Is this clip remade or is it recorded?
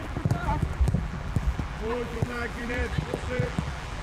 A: remade